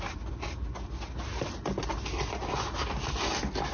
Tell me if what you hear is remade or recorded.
recorded